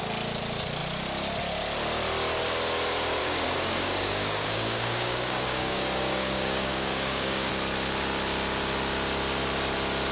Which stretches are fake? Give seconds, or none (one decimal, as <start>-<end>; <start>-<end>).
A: 3.2-7.5